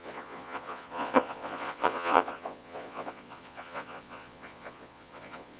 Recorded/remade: remade